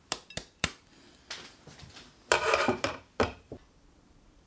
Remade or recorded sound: remade